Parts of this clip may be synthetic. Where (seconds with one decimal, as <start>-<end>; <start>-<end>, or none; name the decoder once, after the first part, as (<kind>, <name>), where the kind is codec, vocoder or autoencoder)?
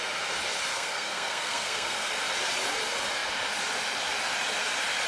0.7-2.1 (codec, SNAC)